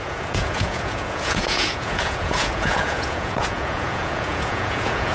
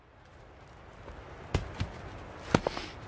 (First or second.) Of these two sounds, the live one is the second